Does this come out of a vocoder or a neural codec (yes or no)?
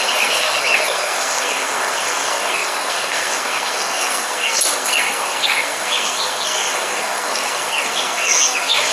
yes